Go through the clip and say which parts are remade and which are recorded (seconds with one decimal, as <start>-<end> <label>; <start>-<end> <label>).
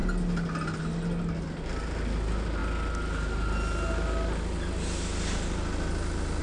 0.0-6.4 recorded